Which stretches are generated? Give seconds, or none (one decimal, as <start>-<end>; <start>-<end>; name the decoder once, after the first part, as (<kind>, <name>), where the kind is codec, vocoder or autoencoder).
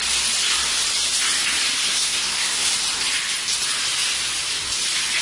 1.8-2.7 (codec, SNAC)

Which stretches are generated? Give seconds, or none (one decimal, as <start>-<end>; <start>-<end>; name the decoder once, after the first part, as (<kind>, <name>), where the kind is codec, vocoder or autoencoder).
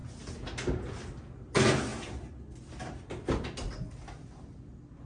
none